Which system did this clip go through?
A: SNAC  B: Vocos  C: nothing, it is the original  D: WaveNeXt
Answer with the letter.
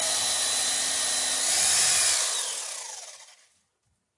C